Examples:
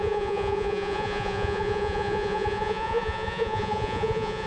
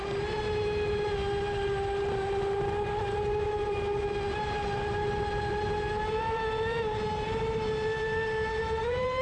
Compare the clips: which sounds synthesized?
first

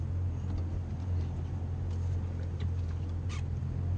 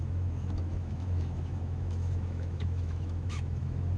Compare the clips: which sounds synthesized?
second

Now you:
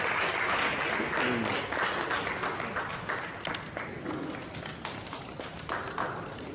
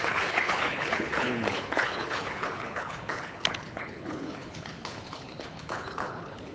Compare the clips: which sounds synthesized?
second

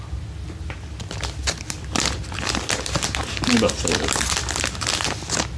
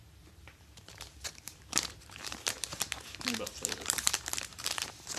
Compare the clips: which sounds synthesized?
second